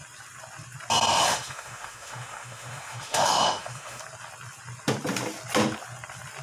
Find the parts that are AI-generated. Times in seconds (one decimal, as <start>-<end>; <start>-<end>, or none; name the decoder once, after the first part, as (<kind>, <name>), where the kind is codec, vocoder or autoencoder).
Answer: 1.1-4.0 (autoencoder, DAC-VAE)